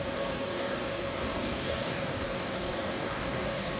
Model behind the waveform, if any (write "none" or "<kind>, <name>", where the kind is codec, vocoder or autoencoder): codec, DAC